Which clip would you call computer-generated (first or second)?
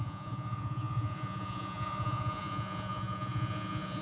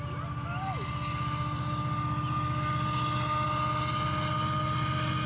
first